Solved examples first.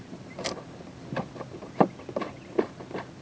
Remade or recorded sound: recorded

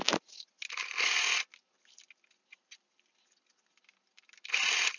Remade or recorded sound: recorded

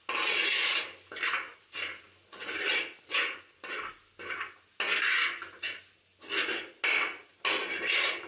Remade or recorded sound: recorded